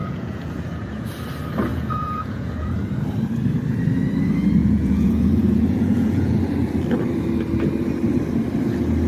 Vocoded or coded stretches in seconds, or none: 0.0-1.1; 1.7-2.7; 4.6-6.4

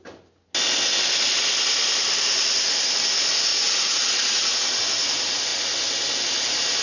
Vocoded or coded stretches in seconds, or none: 3.5-4.8